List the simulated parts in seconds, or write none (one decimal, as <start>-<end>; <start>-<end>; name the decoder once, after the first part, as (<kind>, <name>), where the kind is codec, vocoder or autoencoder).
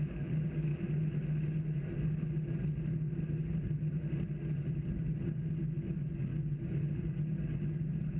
none